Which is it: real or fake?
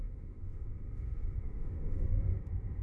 fake